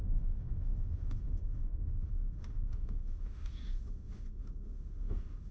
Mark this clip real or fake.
fake